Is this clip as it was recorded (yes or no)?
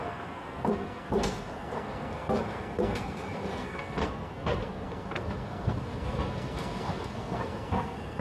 no